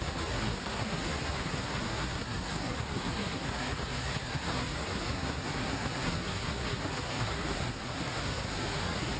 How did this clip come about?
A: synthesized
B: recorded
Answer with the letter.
A